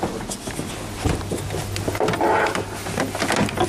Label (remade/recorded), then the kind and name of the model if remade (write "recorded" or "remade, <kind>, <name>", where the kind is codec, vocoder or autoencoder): recorded